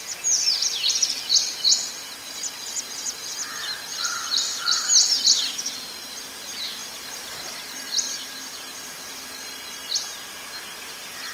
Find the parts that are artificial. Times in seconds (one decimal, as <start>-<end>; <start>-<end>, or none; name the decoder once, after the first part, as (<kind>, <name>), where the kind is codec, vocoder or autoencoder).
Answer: 3.9-4.8 (vocoder, BigVGAN v2)